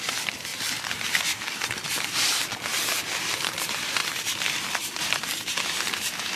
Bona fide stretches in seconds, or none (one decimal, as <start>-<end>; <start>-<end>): none

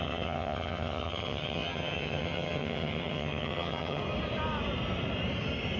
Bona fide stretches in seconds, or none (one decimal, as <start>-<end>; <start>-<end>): 4.0-5.8

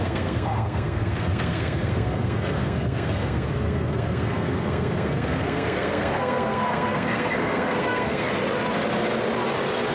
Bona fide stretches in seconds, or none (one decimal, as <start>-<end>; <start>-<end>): 8.3-9.9

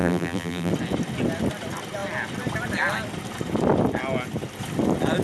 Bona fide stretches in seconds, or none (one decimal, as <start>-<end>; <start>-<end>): 0.7-5.2

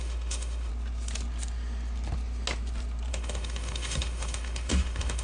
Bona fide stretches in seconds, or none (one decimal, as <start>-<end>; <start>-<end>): 0.7-3.1

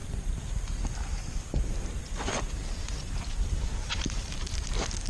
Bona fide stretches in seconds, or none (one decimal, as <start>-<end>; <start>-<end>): 0.0-3.0; 4.6-5.1

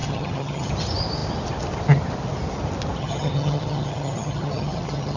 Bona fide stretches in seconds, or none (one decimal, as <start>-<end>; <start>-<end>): 0.7-3.0